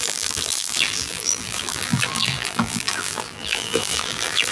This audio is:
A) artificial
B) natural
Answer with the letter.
A